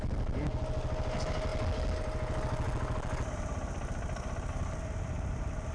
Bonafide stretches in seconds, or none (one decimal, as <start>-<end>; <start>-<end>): 0.0-5.7